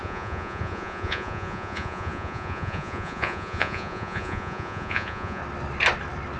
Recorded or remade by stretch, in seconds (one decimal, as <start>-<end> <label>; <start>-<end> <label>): 0.0-5.4 remade; 5.4-6.4 recorded